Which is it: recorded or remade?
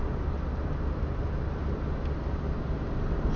recorded